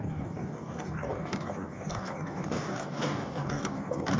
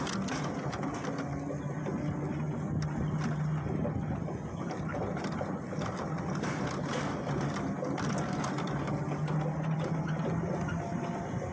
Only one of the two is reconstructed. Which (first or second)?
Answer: first